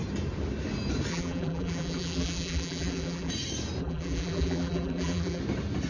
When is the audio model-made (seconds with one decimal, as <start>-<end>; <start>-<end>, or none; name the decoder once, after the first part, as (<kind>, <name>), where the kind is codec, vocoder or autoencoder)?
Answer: 1.1-3.3 (vocoder, BigVGAN v2); 3.8-5.4

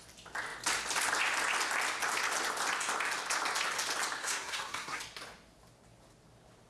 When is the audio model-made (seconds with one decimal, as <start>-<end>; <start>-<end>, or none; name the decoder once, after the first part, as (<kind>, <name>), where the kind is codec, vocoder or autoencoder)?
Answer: 4.2-5.0 (codec, SNAC)

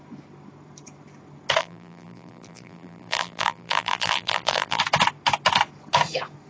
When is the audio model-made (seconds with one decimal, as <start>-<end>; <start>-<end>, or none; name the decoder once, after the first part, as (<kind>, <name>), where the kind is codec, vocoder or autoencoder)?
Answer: 1.6-4.8 (vocoder, BigVGAN v2)

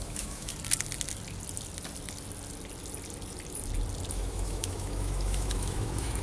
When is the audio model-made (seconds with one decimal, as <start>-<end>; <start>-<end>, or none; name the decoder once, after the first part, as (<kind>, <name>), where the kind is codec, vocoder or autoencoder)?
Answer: 0.0-0.5 (autoencoder, DAC-VAE); 4.1-6.2

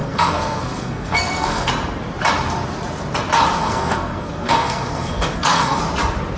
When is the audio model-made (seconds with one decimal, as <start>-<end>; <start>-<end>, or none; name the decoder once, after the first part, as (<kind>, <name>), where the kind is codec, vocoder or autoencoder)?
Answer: 0.0-1.7 (codec, SNAC); 3.6-5.8